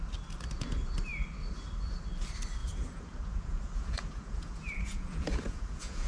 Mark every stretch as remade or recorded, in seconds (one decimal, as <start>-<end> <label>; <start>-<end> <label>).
0.0-2.6 recorded; 2.6-6.1 remade